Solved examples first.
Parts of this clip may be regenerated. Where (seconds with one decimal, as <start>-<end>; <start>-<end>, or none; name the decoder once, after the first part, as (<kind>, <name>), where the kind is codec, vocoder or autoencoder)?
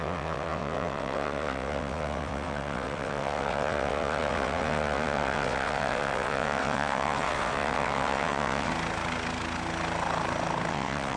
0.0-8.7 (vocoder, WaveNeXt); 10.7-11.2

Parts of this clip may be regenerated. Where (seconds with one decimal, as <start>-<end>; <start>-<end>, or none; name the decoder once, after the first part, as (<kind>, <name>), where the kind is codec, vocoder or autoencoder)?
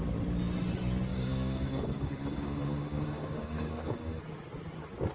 1.1-4.2 (codec, DAC)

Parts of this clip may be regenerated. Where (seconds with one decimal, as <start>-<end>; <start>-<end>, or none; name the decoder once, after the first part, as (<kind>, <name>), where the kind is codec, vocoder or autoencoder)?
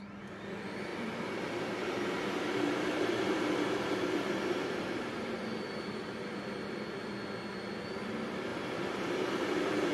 0.9-5.6 (vocoder, BigVGAN v2); 8.5-9.9